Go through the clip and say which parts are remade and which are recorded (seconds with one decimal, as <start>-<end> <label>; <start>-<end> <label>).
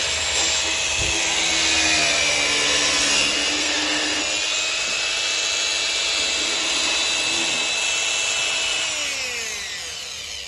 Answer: 0.0-3.6 recorded; 3.6-4.2 remade; 4.2-10.5 recorded